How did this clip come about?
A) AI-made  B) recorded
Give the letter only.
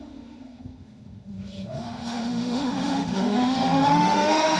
A